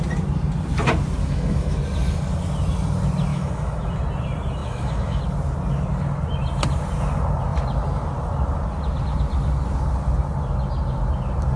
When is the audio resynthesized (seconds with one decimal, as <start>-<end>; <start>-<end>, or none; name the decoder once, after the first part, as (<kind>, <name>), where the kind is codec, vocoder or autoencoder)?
1.2-1.8 (autoencoder, DAC-VAE); 3.3-3.9; 4.6-5.2